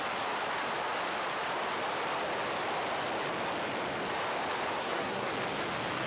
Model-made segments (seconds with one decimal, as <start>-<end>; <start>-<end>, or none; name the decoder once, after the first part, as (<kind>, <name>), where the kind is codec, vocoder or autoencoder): 4.8-5.3 (codec, SNAC)